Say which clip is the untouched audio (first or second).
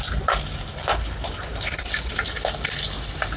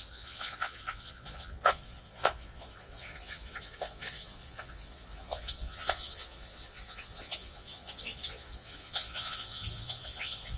first